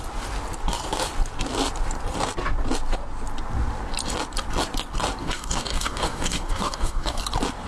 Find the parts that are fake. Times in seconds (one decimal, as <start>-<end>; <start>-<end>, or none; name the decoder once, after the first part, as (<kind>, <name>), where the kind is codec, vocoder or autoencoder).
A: 5.2-7.2 (codec, DAC)

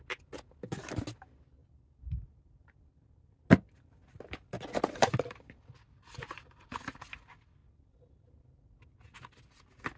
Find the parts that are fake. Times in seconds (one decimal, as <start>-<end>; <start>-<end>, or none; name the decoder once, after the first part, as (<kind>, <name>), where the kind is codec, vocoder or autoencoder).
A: 4.9-6.6 (vocoder, BigVGAN v2)

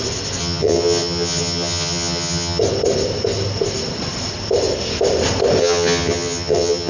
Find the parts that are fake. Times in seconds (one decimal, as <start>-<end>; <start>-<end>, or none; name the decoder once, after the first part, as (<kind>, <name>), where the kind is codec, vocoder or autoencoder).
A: 0.4-2.6 (vocoder, HiFi-GAN); 5.6-6.9

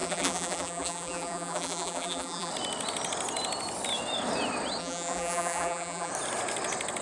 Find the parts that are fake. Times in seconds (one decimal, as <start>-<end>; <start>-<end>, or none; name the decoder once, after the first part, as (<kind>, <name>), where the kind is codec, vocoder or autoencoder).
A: 0.0-2.5 (vocoder, BigVGAN v2); 4.8-6.1

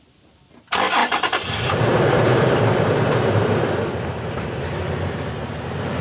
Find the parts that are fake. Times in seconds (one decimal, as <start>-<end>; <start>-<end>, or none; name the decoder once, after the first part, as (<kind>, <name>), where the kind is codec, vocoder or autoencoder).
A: 1.0-4.6 (vocoder, BigVGAN v2)

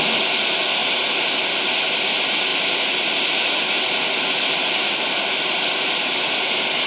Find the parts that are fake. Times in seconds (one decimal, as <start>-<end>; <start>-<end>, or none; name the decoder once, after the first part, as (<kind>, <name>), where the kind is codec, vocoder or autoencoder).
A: none

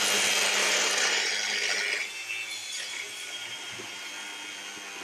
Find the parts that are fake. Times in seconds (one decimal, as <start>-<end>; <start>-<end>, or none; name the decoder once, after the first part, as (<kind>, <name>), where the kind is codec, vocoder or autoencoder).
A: 0.6-1.3 (vocoder, BigVGAN v2); 2.6-4.1